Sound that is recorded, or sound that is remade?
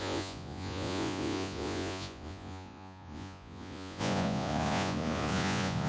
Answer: remade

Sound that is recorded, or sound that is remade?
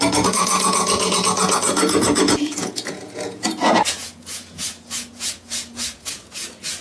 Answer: remade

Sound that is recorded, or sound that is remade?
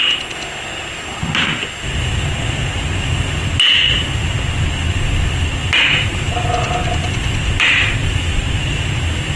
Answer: recorded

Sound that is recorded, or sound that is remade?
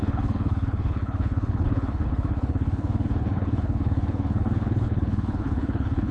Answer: remade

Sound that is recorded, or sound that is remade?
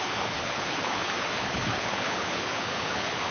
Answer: remade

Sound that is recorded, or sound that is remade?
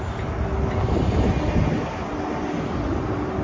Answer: recorded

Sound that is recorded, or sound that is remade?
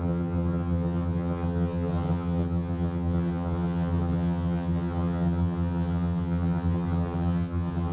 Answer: remade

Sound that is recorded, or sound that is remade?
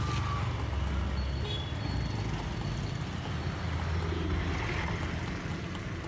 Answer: recorded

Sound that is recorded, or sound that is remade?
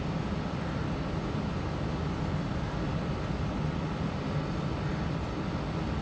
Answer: recorded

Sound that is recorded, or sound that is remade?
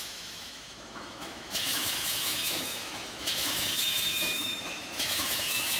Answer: remade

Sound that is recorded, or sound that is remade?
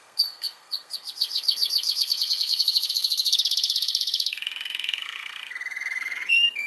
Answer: remade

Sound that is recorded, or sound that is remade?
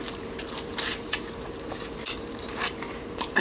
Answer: remade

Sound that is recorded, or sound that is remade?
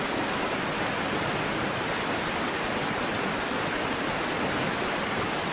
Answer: recorded